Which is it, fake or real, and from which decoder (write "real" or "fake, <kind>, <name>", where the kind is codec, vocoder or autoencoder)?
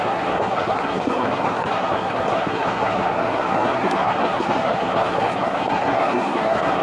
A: fake, codec, SNAC